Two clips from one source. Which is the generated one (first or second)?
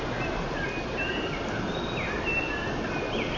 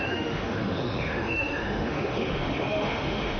second